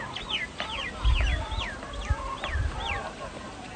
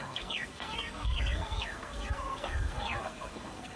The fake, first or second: second